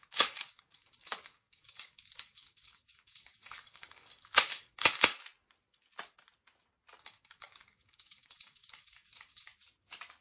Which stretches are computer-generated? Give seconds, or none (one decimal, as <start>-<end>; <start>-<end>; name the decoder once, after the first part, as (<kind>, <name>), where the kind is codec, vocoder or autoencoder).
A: 0.0-5.1 (codec, DAC); 7.0-9.5